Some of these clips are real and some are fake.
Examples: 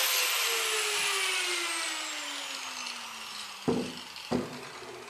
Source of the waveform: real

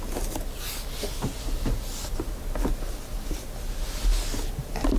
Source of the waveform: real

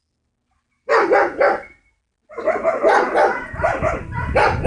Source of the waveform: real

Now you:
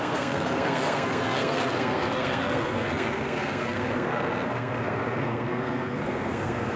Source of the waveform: fake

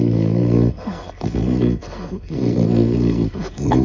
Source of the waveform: fake